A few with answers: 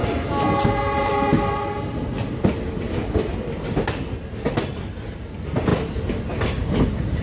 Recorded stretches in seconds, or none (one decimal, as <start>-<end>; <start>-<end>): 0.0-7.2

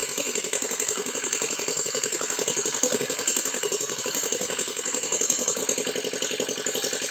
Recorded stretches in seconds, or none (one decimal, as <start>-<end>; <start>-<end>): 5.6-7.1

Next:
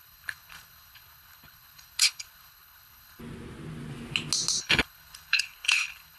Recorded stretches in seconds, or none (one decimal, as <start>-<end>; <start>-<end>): 3.2-4.6

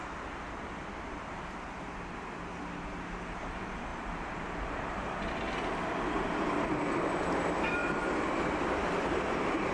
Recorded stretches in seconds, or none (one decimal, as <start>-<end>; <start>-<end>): 0.0-9.7

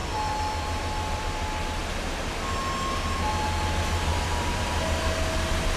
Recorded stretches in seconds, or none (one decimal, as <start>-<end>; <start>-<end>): 1.3-1.8; 2.4-4.1; 4.7-5.8